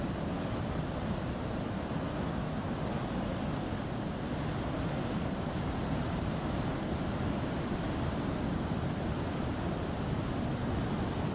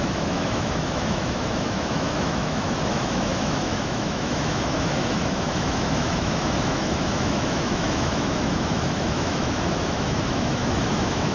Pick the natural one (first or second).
first